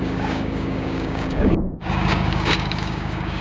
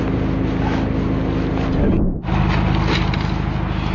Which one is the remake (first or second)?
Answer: first